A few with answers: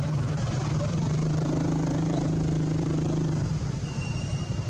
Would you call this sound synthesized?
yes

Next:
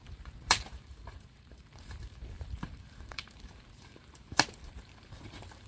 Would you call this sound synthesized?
yes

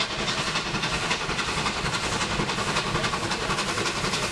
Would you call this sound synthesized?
no